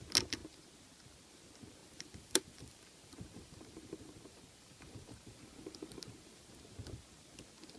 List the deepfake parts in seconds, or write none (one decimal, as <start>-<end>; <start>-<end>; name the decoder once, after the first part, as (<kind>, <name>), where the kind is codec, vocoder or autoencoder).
1.8-6.5 (vocoder, BigVGAN v2)